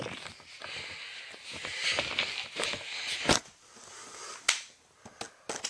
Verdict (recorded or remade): recorded